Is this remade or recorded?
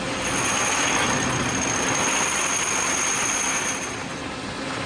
recorded